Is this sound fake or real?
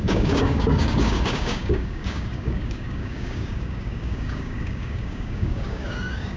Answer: fake